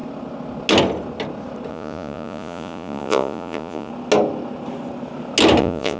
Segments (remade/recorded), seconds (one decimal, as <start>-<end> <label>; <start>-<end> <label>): 0.0-1.7 recorded; 1.7-3.9 remade; 3.9-5.6 recorded; 5.6-6.0 remade